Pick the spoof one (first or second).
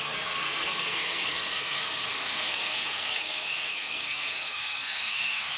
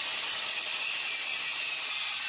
first